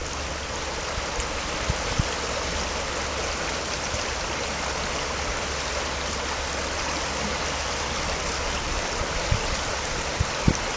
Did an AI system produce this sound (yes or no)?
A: no